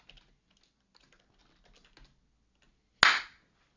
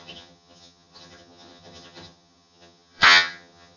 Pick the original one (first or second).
first